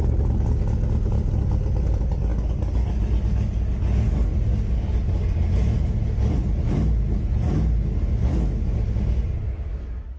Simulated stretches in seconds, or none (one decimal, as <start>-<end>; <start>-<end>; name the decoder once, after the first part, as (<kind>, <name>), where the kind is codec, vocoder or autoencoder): none